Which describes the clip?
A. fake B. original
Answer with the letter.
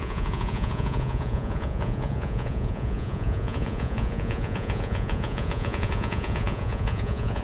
A